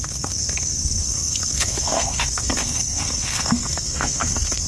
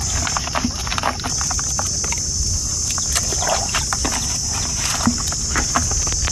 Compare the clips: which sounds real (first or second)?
second